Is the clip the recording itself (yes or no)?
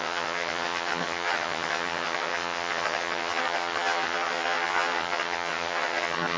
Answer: no